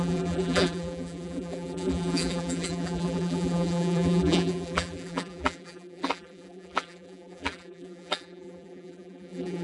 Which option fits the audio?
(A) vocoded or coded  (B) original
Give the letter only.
A